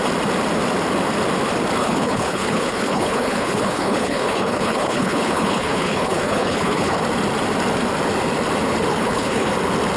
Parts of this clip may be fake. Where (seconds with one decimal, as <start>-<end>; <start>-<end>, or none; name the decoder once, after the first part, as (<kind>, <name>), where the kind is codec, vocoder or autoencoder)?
1.8-7.0 (codec, HILCodec); 8.9-9.5